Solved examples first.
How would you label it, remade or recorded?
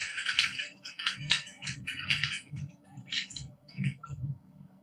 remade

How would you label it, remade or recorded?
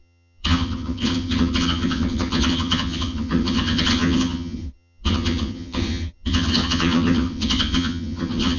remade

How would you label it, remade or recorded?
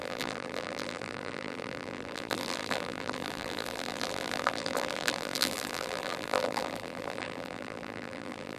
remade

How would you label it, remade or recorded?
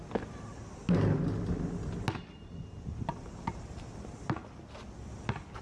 recorded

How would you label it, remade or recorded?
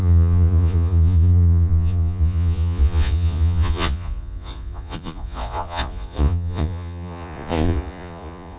remade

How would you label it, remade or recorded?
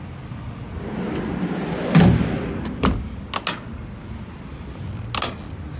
recorded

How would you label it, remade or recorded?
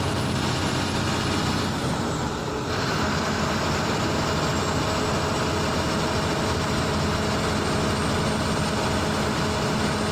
recorded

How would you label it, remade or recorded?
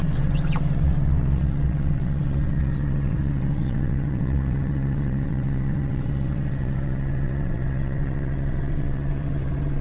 remade